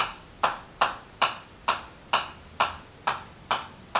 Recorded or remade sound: recorded